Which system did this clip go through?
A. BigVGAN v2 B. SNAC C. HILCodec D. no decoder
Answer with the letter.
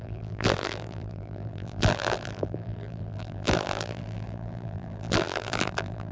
A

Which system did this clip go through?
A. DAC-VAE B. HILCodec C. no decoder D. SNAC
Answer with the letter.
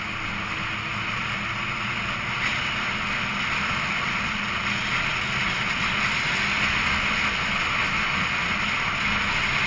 C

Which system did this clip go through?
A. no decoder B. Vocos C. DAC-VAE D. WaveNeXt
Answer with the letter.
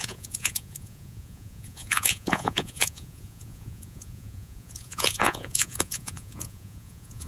B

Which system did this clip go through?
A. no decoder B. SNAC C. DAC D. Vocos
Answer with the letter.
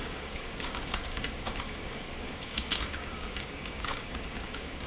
C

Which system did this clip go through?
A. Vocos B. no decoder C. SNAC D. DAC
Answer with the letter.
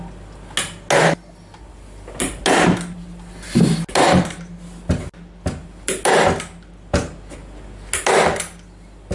B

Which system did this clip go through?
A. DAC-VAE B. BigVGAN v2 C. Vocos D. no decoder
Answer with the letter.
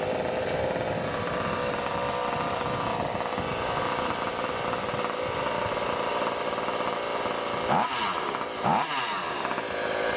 D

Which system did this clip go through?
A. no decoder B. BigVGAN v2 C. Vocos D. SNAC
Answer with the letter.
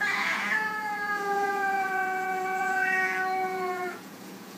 C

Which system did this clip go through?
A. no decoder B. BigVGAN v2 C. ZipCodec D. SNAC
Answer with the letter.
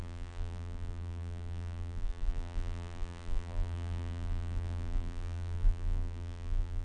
B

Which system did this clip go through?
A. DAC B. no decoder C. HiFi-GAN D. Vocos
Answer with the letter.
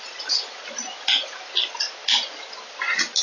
B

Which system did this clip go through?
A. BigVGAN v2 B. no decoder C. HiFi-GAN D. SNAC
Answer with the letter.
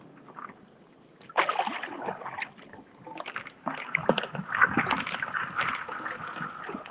B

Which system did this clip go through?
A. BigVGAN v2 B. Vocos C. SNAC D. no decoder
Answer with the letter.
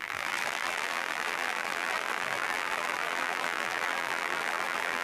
A